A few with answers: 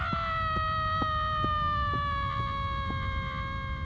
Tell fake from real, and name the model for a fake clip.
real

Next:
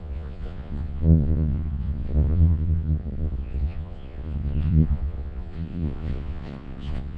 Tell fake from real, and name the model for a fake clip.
fake, vocoder, Vocos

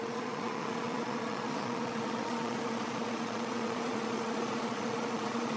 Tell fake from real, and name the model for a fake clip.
fake, vocoder, Vocos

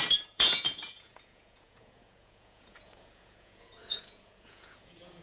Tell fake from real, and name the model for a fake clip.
fake, vocoder, Vocos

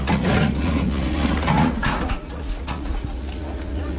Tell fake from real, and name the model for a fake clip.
fake, vocoder, Vocos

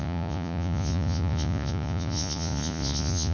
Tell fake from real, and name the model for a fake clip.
fake, vocoder, Vocos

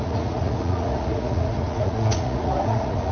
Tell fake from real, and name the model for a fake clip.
fake, vocoder, Vocos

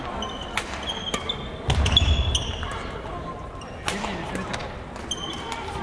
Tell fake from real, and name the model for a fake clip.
real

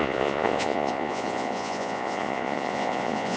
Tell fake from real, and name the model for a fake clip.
fake, vocoder, Vocos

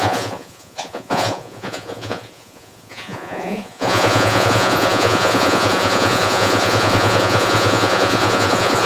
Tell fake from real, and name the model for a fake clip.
fake, vocoder, Vocos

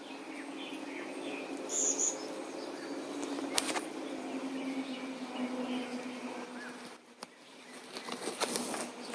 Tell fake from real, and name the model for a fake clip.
real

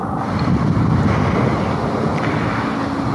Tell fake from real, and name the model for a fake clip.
real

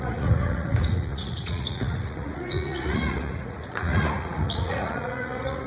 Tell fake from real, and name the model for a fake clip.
fake, vocoder, Vocos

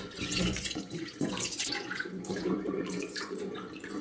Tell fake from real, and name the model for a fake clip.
fake, vocoder, Vocos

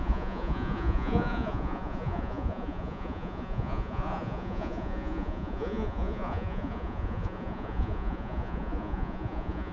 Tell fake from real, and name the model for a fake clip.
fake, vocoder, Vocos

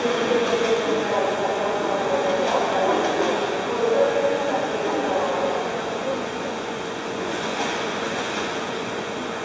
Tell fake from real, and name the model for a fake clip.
fake, vocoder, Vocos